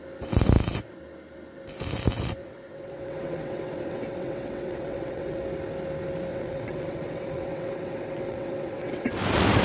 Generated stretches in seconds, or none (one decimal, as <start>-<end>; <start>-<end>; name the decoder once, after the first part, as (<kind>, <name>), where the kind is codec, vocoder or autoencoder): 2.4-5.4 (vocoder, WaveNeXt); 6.3-9.1